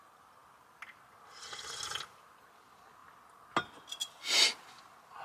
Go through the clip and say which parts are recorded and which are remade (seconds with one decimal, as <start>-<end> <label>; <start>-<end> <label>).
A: 0.0-5.2 recorded